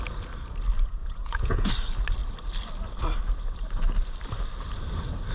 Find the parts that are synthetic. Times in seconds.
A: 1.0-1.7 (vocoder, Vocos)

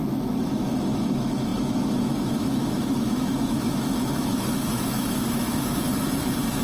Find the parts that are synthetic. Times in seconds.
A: 0.0-6.6 (autoencoder, DAC-VAE)

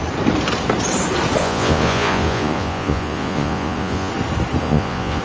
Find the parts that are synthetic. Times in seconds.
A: 1.4-4.1 (vocoder, Vocos); 4.6-5.2

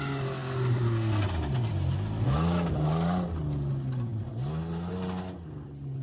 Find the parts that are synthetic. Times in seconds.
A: none

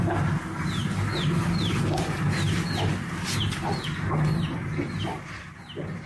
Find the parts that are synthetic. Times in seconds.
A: none

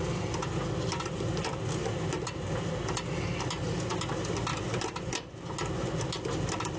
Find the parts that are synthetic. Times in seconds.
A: none

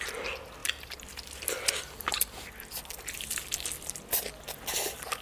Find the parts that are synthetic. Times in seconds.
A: none